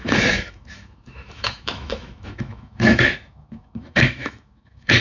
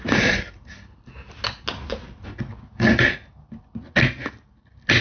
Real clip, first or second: second